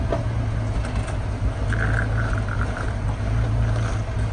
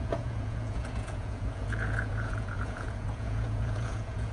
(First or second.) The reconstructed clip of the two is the second